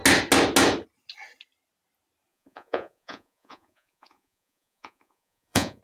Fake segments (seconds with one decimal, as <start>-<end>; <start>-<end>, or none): 2.3-5.8